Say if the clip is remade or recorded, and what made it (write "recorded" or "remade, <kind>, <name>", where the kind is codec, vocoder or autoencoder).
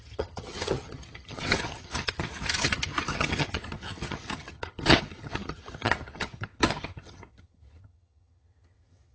remade, vocoder, HiFi-GAN